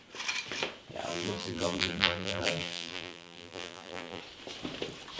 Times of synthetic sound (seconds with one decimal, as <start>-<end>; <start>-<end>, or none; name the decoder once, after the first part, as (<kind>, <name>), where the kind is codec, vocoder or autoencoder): 1.1-4.2 (vocoder, BigVGAN v2)